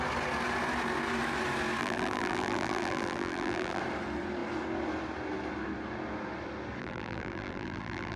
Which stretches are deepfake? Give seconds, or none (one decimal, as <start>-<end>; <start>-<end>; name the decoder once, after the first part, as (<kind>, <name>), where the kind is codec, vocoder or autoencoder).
1.8-3.8 (vocoder, BigVGAN v2); 6.8-8.2